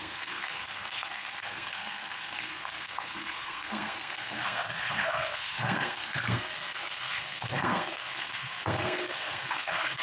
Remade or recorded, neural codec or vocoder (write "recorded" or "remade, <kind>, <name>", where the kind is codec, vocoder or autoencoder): remade, codec, SNAC